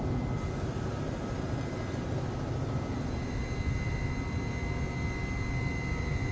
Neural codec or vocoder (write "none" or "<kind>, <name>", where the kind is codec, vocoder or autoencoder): none